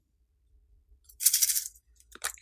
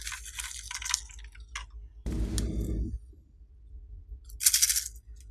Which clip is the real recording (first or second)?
second